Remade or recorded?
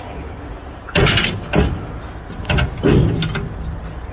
recorded